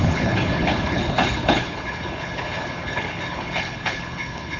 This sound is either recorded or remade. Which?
remade